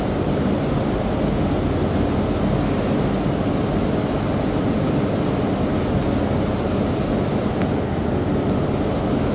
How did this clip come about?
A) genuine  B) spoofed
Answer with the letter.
A